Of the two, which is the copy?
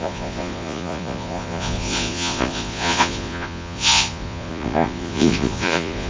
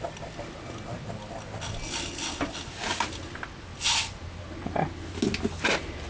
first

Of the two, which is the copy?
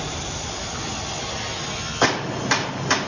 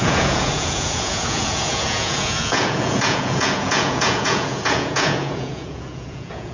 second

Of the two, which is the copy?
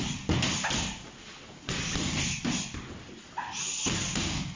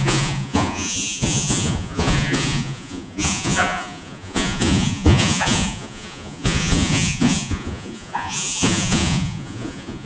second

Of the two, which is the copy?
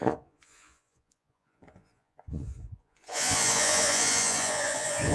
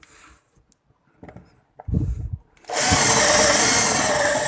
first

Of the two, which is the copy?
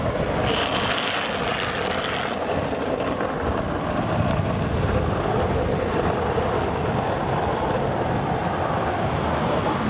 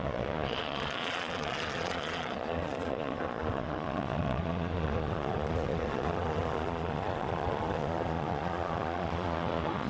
second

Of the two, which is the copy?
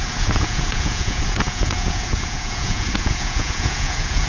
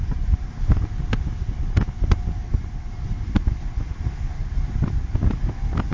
first